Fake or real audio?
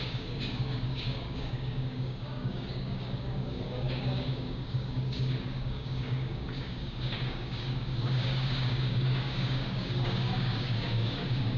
fake